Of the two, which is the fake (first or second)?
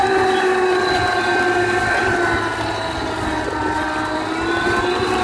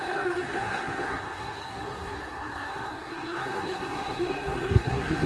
second